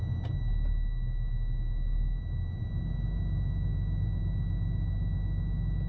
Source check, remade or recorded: recorded